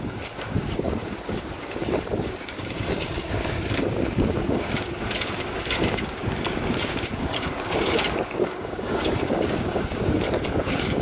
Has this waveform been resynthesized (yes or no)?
yes